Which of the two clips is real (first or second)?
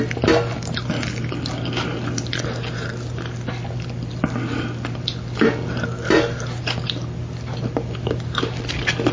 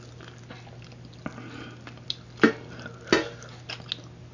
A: second